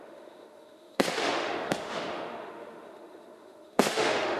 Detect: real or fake fake